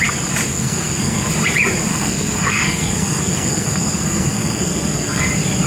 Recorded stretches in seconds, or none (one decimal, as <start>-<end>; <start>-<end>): 0.0-0.5; 1.3-1.9; 5.3-5.7